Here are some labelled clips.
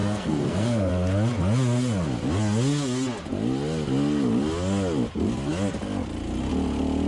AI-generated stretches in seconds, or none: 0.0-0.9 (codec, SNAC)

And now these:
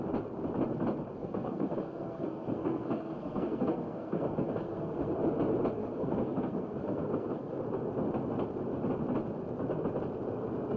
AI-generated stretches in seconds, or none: 1.2-5.1 (codec, SNAC); 5.8-7.6

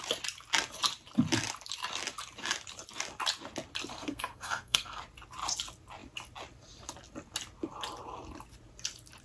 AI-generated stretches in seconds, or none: 3.9-5.0 (codec, SNAC)

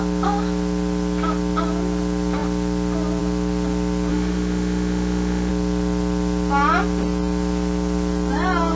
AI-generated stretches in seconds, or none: 4.1-5.5 (autoencoder, DAC-VAE)

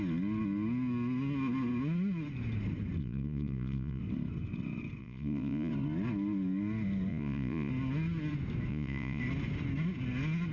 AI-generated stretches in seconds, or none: 3.0-4.0 (vocoder, Vocos); 5.0-5.7; 7.1-7.7; 8.7-9.2